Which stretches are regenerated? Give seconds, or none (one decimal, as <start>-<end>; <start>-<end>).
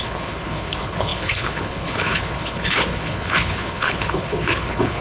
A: 0.0-5.0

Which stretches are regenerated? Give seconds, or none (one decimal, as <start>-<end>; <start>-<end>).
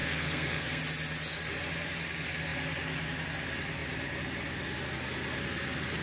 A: 0.0-0.8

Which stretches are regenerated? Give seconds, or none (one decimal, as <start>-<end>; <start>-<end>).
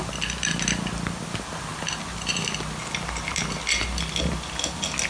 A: none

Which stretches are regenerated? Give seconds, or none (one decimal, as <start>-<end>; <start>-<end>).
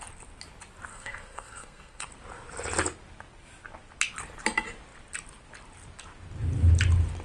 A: 0.9-2.1